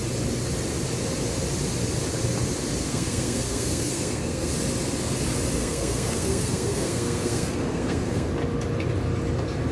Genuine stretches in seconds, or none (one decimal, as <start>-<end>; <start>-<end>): 0.0-2.8; 4.5-5.6; 8.3-9.7